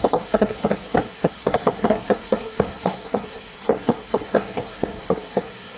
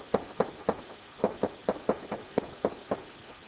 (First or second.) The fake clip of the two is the first